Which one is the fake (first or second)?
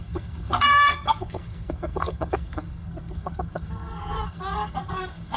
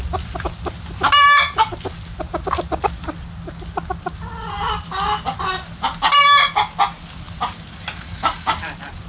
first